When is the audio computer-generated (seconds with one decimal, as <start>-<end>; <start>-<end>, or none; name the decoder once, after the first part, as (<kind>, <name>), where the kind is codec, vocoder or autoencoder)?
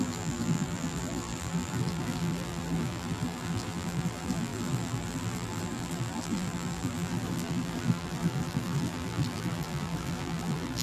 0.0-10.8 (vocoder, BigVGAN v2)